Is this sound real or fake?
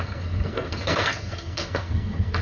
fake